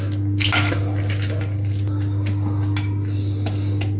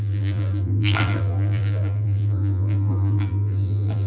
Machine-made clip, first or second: second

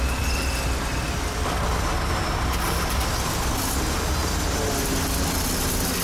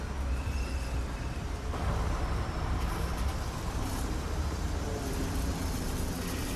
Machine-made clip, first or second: second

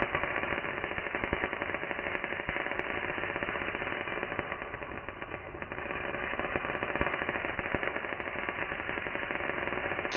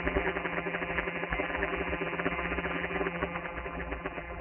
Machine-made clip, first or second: second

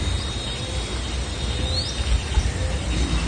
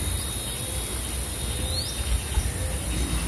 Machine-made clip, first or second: first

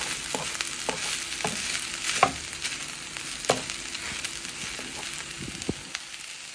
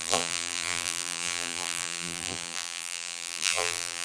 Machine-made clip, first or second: second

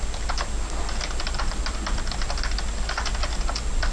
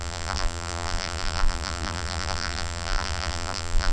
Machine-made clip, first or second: second